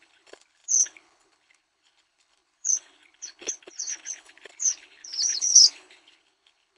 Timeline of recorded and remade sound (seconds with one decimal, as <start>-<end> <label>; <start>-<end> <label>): 0.0-6.8 remade